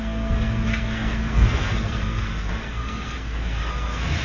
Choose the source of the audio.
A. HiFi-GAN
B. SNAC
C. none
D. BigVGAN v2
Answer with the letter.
B